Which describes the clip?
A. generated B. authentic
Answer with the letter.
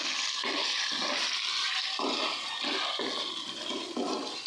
B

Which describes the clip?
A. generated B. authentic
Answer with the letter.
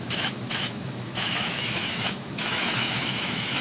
A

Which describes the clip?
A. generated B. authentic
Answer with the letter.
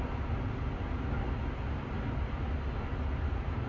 B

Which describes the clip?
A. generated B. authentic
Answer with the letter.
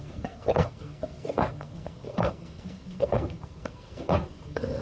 A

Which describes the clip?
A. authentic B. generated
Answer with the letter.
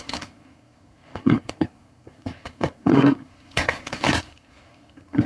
B